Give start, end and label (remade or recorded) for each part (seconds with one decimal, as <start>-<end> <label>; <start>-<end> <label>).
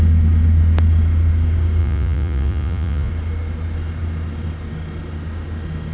0.0-1.8 recorded; 1.8-3.1 remade; 3.1-5.9 recorded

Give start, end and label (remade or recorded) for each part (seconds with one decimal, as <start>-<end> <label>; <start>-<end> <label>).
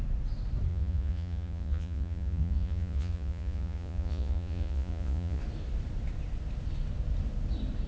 0.0-0.7 recorded; 0.7-5.4 remade; 5.4-7.9 recorded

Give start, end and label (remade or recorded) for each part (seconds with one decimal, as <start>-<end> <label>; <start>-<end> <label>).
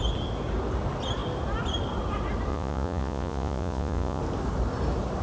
0.0-2.5 recorded; 2.5-4.2 remade; 4.2-5.2 recorded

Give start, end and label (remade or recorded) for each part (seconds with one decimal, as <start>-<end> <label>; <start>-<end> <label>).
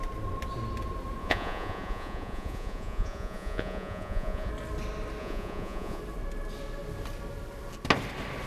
0.0-1.2 recorded; 1.2-4.5 remade; 4.5-5.2 recorded; 5.2-6.0 remade; 6.0-8.5 recorded